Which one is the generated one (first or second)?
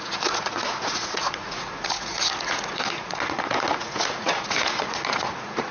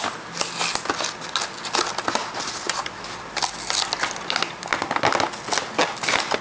first